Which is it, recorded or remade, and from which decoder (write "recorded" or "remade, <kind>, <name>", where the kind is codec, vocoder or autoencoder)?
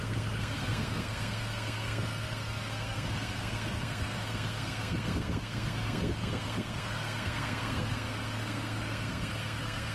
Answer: remade, codec, SNAC